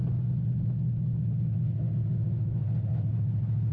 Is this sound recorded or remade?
recorded